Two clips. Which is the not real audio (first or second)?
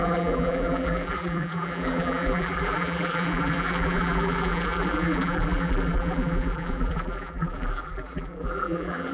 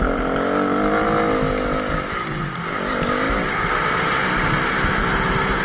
first